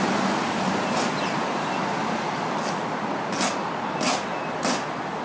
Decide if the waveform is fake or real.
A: real